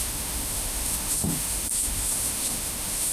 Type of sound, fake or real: fake